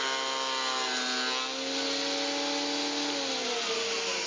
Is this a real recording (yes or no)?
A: yes